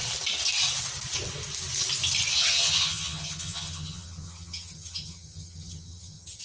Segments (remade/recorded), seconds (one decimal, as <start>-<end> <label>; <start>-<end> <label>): 0.0-2.3 recorded; 2.3-6.4 remade